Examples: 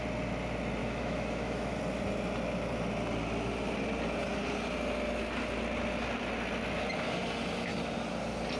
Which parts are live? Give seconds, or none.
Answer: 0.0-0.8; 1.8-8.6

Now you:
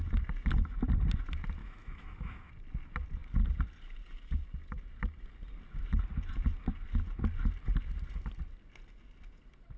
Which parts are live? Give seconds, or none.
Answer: 0.0-1.6; 2.5-9.8

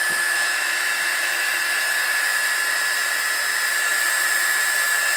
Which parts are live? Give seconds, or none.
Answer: 2.0-5.2

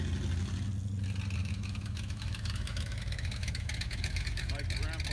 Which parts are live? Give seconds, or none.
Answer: 0.0-1.4; 4.5-5.1

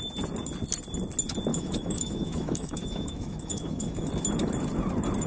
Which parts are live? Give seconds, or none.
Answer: 0.0-1.5; 4.1-5.3